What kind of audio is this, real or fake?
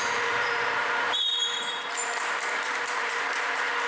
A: fake